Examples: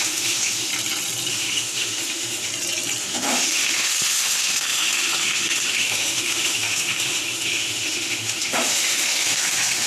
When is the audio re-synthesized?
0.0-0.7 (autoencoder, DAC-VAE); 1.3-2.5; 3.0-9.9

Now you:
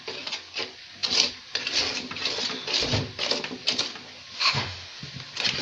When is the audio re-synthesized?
4.4-5.0 (autoencoder, DAC-VAE)

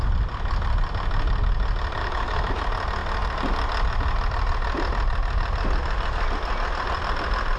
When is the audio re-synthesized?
2.0-2.5 (autoencoder, DAC-VAE)

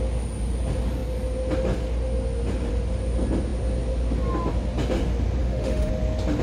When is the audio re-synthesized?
5.4-5.9 (autoencoder, DAC-VAE)

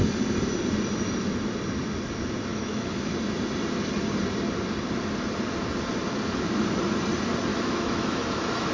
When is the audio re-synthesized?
2.5-3.1 (autoencoder, DAC-VAE); 7.5-8.7

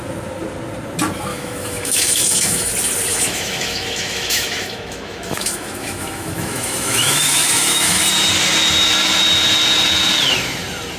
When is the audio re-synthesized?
1.3-2.7 (autoencoder, DAC-VAE); 3.1-8.0

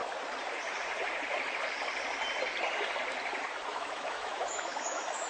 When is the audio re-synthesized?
3.7-5.3 (autoencoder, DAC-VAE)

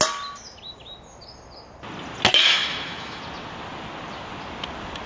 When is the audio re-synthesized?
2.4-3.2 (autoencoder, DAC-VAE)